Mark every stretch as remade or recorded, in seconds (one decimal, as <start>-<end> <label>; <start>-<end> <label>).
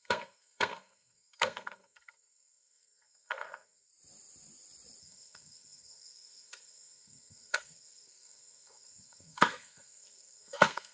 0.0-3.9 remade; 3.9-5.0 recorded; 5.0-10.9 remade